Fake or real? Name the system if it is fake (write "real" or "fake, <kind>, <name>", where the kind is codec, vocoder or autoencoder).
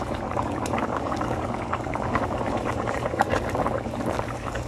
fake, codec, DAC